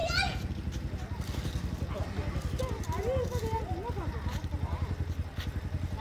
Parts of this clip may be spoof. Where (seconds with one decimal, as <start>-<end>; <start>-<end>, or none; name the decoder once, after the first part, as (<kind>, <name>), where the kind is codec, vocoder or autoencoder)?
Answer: 0.0-0.5 (vocoder, Vocos)